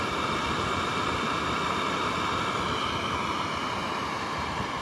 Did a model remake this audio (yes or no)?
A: yes